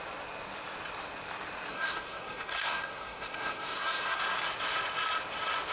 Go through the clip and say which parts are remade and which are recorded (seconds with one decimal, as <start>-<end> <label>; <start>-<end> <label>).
0.0-1.7 recorded; 1.7-4.2 remade; 4.2-5.7 recorded